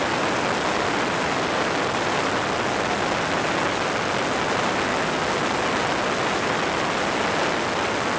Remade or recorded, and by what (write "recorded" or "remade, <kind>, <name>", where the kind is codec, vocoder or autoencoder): recorded